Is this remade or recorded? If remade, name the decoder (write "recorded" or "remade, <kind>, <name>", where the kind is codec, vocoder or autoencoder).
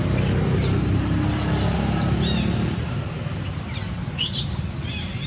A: recorded